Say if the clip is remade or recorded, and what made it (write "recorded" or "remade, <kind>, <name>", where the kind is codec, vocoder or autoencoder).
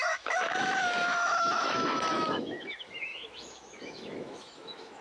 remade, autoencoder, DAC-VAE